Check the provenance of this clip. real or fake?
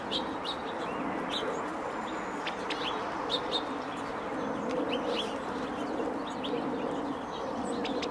real